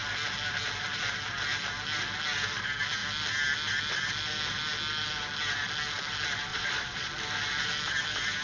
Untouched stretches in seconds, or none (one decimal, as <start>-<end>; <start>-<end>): 0.0-6.5; 7.1-8.4